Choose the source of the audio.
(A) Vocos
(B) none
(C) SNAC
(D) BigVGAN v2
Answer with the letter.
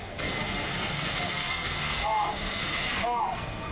C